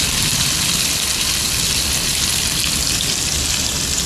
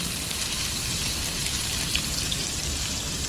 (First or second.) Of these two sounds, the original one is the first